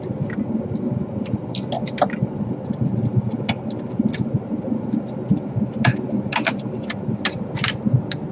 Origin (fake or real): real